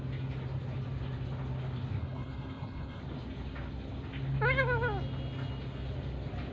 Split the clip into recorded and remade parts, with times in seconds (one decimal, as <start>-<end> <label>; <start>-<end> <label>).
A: 0.0-2.0 recorded; 2.0-3.0 remade; 3.0-6.5 recorded